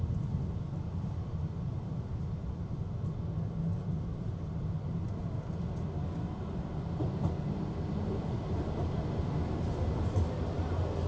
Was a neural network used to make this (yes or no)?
no